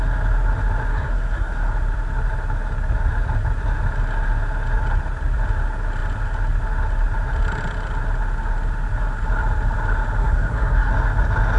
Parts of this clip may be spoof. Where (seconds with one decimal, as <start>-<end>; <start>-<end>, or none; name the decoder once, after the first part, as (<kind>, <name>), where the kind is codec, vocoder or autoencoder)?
0.9-1.7 (codec, SNAC); 10.2-10.9